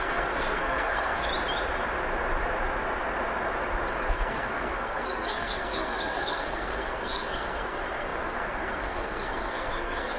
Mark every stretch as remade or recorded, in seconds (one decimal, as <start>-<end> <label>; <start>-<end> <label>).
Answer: 0.0-1.3 remade; 1.3-4.1 recorded; 4.1-10.2 remade